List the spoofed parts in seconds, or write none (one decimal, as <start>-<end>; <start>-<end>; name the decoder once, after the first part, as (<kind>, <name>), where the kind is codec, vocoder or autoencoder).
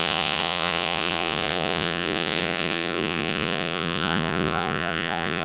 0.0-5.4 (vocoder, Vocos)